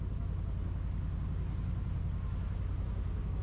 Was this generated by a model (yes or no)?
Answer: no